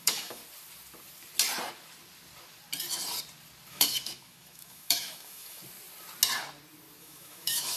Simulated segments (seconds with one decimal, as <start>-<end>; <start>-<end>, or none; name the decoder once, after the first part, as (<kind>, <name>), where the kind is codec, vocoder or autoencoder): 0.0-0.4 (autoencoder, DAC-VAE); 3.7-5.6; 7.0-7.8